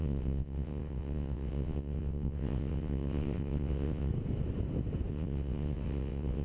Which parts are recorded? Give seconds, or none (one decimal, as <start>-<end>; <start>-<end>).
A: 4.1-5.1